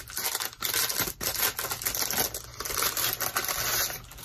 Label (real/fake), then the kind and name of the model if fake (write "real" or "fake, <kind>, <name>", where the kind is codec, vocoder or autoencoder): real